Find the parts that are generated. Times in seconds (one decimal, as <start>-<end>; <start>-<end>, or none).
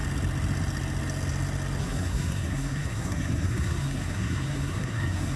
1.8-5.4